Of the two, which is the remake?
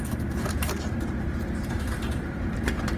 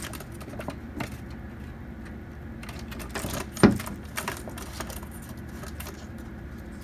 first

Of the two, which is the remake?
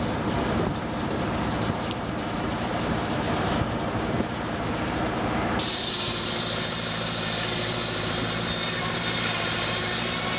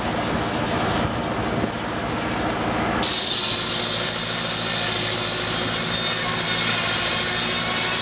first